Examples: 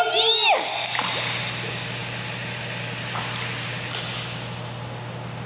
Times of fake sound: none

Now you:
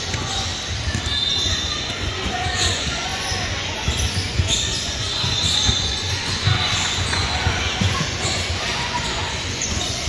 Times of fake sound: 0.0-0.5 (vocoder, Vocos); 1.4-10.1

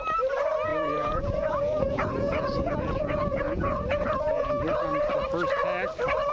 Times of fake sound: 0.7-4.5 (vocoder, Vocos)